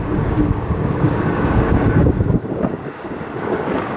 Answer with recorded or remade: remade